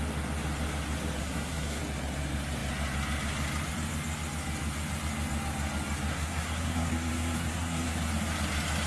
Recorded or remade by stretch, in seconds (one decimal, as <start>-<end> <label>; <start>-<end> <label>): 0.0-1.2 recorded; 1.2-1.8 remade; 1.8-6.1 recorded; 6.1-8.1 remade; 8.1-8.9 recorded